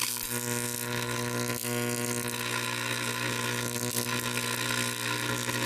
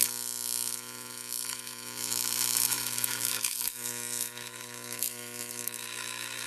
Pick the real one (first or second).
first